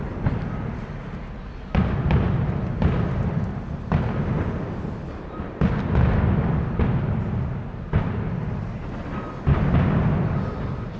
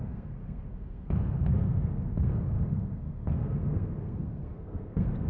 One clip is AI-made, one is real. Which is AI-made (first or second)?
second